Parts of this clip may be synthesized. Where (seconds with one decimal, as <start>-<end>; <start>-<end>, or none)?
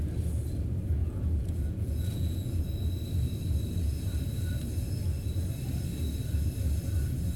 1.0-2.6